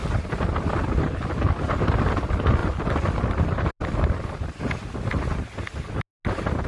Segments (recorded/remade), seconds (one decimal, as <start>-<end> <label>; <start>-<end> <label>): 0.0-6.7 recorded